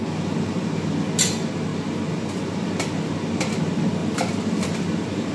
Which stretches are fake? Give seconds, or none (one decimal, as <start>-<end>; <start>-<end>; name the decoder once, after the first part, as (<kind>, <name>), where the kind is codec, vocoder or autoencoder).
4.0-5.3 (vocoder, BigVGAN v2)